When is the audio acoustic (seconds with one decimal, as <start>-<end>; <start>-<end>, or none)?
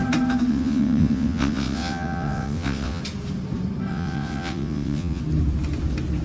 0.0-0.5; 3.0-3.9; 5.2-6.2